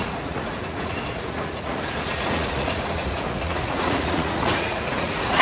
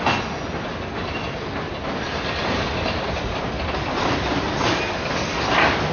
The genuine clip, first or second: second